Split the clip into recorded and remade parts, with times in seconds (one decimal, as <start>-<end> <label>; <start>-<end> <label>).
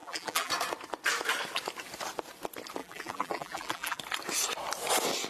0.0-0.5 remade; 0.5-2.8 recorded; 2.8-4.0 remade; 4.0-5.3 recorded